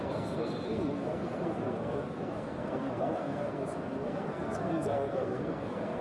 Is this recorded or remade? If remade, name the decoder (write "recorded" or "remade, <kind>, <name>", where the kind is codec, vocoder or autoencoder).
remade, codec, SNAC